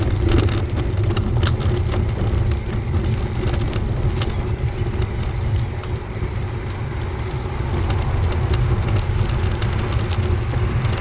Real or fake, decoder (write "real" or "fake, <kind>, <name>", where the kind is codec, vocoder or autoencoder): real